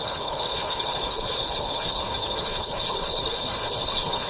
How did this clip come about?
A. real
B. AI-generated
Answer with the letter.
B